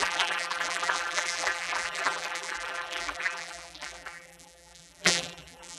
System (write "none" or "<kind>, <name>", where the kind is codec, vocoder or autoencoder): vocoder, BigVGAN v2